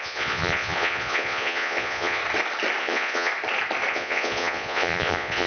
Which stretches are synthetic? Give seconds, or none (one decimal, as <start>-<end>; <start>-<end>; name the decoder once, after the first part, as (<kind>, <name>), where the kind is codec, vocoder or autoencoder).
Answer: 0.0-2.2 (vocoder, Vocos); 2.8-3.3; 3.9-5.5